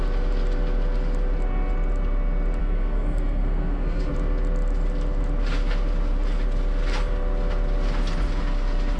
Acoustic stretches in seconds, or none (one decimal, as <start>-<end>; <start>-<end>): 0.0-2.6; 4.1-9.0

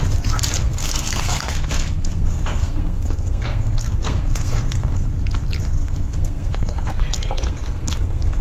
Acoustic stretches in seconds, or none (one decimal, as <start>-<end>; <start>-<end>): 0.0-0.6; 5.1-5.8

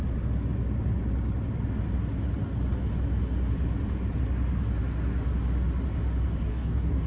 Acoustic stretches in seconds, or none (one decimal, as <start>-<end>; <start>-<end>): 0.0-6.5

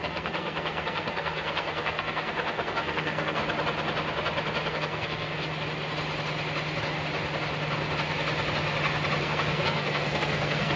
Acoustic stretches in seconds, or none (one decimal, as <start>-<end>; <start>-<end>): 3.4-4.7; 5.5-9.2

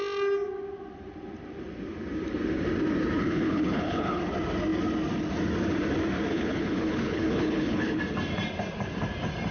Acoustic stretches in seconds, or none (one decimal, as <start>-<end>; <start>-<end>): 0.0-3.2; 4.2-6.3; 8.0-9.5

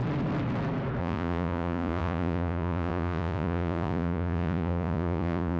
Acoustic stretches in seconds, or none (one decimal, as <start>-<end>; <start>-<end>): 0.0-1.0

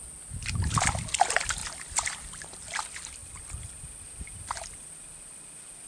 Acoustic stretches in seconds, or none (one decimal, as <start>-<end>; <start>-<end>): 0.0-1.6; 2.8-3.2; 3.8-5.9

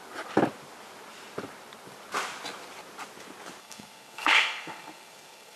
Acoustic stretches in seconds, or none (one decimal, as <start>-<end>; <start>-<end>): 0.0-3.6